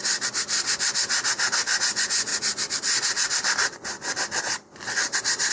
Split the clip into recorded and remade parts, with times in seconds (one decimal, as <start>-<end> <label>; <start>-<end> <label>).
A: 0.0-1.8 recorded; 1.8-2.3 remade; 2.3-5.5 recorded